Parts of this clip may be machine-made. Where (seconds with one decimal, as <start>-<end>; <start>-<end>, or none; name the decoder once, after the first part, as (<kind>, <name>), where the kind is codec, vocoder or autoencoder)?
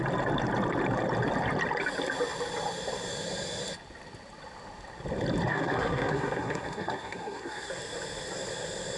5.5-7.7 (codec, SNAC)